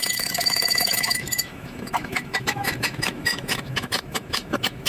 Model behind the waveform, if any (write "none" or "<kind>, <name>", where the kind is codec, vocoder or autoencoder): autoencoder, DAC-VAE